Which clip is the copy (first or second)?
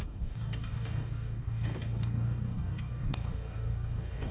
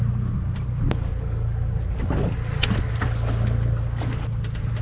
first